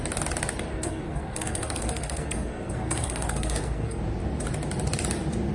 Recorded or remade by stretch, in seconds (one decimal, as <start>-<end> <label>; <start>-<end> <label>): 0.0-0.7 recorded; 0.7-4.0 remade; 4.0-5.5 recorded